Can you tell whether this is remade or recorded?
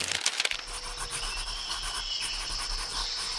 recorded